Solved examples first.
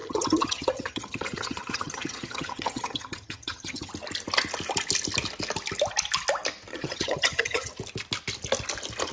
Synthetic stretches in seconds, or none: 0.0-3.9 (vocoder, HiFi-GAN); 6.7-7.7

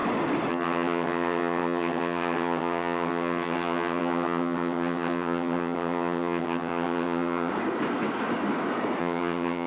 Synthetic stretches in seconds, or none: 0.5-7.5 (vocoder, HiFi-GAN); 9.0-9.7

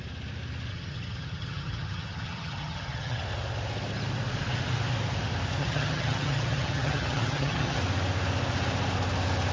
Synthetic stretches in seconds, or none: 0.7-3.2 (vocoder, HiFi-GAN); 5.6-7.8

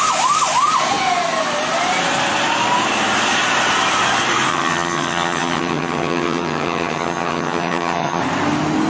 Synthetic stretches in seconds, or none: 4.5-8.2 (vocoder, HiFi-GAN)